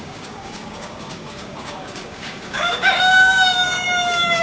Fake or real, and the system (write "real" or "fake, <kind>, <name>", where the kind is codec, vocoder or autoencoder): fake, codec, DAC